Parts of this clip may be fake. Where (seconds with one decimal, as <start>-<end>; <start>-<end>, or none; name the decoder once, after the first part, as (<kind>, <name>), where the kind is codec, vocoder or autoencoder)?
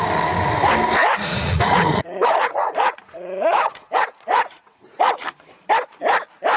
1.2-5.2 (vocoder, Vocos)